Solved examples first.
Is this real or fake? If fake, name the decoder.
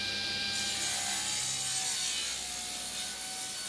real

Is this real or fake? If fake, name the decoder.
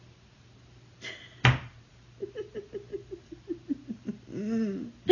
real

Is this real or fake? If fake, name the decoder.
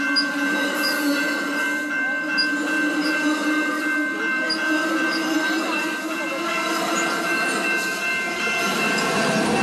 real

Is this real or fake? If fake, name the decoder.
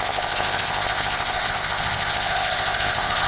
fake, codec, ZipCodec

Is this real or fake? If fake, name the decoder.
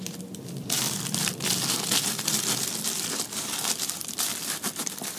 fake, vocoder, BigVGAN v2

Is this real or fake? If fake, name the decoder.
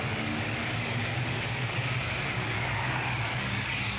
fake, codec, DAC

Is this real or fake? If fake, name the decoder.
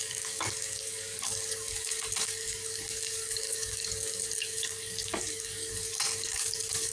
fake, codec, DAC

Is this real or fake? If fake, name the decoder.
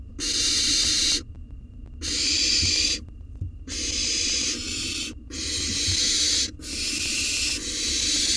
fake, vocoder, BigVGAN v2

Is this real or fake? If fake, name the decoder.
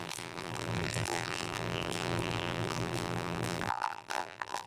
fake, vocoder, BigVGAN v2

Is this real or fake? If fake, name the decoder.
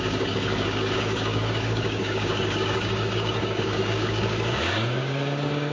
fake, codec, DAC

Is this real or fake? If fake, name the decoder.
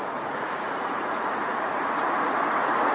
fake, vocoder, Vocos